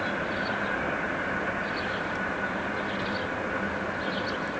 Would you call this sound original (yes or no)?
yes